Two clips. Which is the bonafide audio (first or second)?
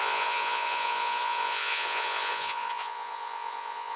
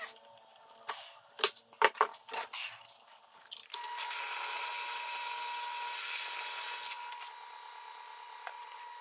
second